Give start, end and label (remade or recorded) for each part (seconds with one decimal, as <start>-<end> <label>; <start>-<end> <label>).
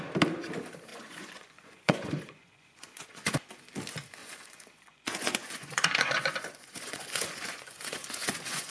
0.0-0.9 recorded; 0.9-3.3 remade; 3.3-4.2 recorded; 4.2-8.7 remade